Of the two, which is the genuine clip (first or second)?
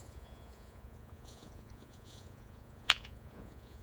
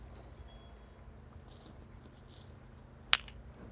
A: second